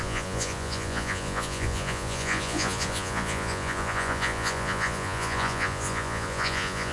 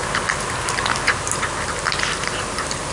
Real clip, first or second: second